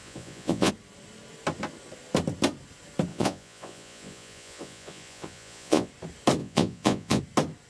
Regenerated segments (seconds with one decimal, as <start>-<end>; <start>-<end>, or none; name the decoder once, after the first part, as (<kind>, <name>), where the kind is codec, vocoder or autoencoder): 0.0-0.7 (vocoder, Vocos); 3.1-5.9; 6.4-7.2